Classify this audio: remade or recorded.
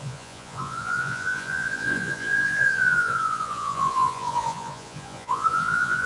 remade